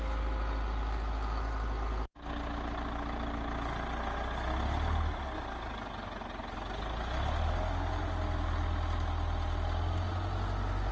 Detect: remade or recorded recorded